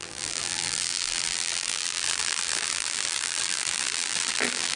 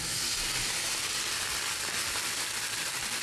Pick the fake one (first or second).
first